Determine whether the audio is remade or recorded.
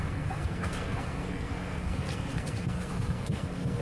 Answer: remade